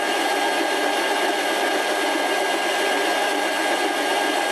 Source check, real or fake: real